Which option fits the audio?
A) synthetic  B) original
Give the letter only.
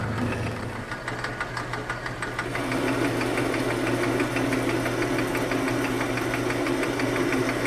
B